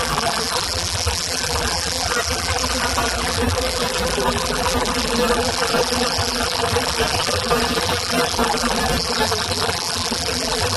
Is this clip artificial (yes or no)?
yes